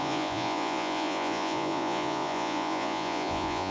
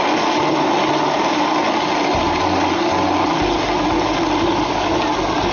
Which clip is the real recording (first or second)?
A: second